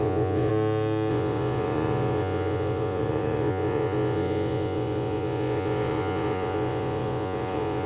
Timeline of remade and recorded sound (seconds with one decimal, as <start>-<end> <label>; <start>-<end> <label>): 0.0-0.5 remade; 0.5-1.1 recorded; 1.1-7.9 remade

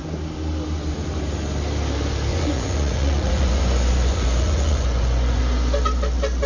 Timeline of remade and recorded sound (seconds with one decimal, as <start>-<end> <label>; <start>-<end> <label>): 0.0-2.3 recorded; 2.3-5.4 remade; 5.4-6.5 recorded

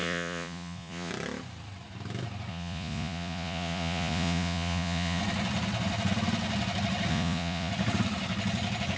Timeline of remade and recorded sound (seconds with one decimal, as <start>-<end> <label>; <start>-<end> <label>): 0.0-1.1 remade; 1.1-2.5 recorded; 2.5-5.2 remade; 5.2-7.1 recorded; 7.1-7.7 remade; 7.7-9.0 recorded